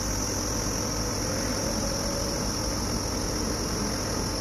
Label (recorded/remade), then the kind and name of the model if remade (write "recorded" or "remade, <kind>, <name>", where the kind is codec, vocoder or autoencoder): recorded